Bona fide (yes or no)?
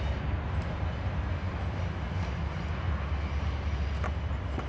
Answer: yes